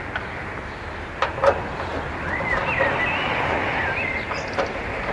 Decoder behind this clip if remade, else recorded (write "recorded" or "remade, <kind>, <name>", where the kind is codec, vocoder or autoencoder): recorded